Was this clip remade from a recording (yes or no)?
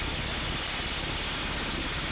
no